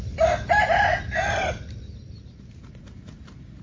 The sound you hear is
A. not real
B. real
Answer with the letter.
B